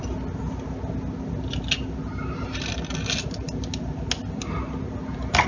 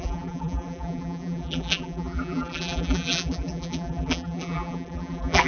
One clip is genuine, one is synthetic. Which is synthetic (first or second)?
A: second